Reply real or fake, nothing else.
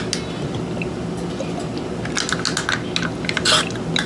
real